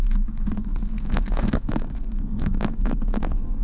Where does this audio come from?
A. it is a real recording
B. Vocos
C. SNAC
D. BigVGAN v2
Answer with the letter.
C